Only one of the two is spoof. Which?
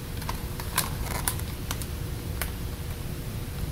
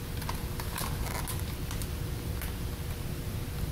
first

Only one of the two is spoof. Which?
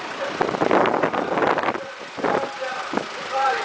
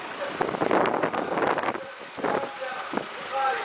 first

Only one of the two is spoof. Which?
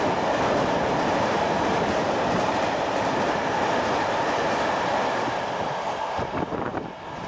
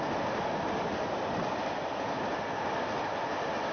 first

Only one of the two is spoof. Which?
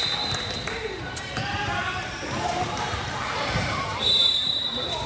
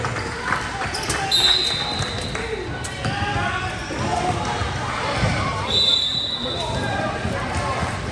first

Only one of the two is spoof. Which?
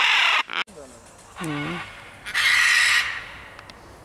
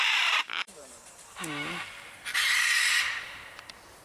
second